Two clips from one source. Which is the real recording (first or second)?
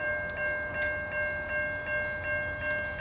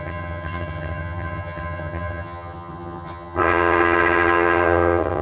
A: first